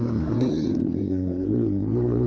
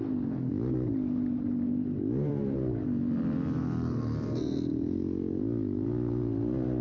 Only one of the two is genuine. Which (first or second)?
second